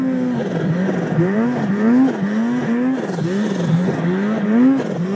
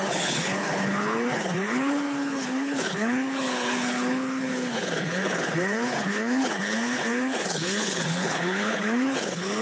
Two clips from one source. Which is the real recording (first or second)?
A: first